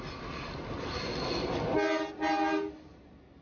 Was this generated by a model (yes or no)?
no